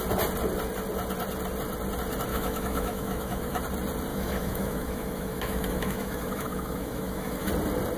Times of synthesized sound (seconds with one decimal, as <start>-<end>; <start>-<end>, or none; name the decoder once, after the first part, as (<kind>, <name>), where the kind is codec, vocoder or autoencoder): 2.3-3.6 (autoencoder, DAC-VAE); 4.1-7.5

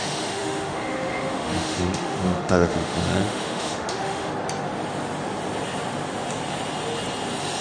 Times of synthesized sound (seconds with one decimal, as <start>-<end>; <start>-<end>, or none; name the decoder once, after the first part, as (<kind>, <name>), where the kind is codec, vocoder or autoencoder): 0.0-4.3 (autoencoder, DAC-VAE)

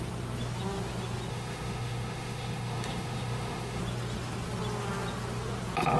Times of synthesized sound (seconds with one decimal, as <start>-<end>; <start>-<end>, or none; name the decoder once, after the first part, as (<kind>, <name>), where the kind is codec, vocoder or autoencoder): 1.3-3.8 (autoencoder, DAC-VAE)

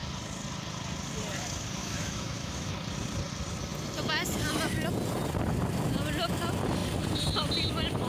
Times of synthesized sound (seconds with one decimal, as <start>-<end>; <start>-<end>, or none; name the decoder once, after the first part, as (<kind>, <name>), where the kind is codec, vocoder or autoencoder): 1.8-2.7 (autoencoder, DAC-VAE)

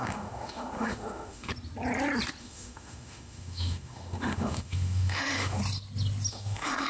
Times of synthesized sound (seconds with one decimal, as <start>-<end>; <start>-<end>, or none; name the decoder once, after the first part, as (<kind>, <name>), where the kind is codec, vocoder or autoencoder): 0.0-1.5 (autoencoder, DAC-VAE); 2.4-5.6; 6.3-6.9

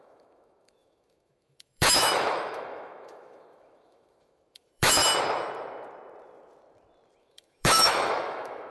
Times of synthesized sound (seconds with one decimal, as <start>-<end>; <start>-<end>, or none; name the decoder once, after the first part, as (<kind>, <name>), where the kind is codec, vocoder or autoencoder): 0.0-5.0 (autoencoder, DAC-VAE); 7.2-8.7

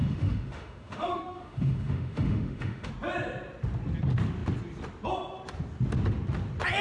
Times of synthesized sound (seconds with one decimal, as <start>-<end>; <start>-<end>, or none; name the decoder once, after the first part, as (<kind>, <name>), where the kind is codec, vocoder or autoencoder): 0.0-2.9 (autoencoder, DAC-VAE)

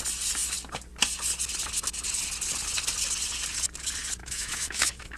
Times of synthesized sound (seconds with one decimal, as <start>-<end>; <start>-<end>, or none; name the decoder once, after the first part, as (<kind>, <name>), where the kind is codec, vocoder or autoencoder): 4.2-5.2 (autoencoder, DAC-VAE)